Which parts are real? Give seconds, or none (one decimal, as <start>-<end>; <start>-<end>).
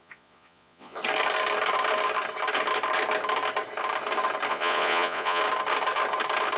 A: 1.0-4.5; 5.4-6.6